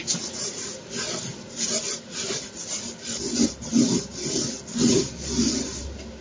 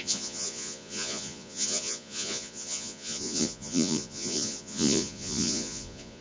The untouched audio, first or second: first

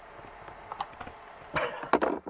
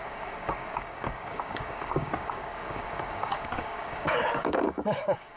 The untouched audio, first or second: first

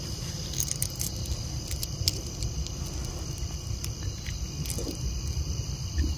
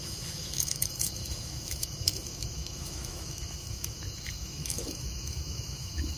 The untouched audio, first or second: first